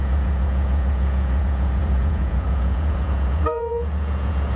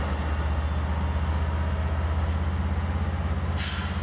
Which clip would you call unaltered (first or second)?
second